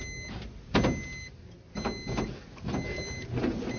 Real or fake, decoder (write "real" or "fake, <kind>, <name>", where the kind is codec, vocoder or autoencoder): real